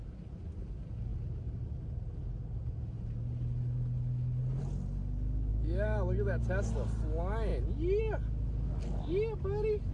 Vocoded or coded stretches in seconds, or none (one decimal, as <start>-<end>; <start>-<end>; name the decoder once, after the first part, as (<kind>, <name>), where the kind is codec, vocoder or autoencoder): 5.5-6.4 (autoencoder, DAC-VAE)